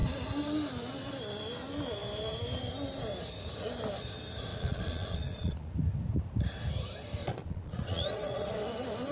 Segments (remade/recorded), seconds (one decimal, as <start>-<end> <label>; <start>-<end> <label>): 0.0-4.5 recorded; 4.5-5.7 remade; 5.7-7.2 recorded; 7.2-8.6 remade; 8.6-9.1 recorded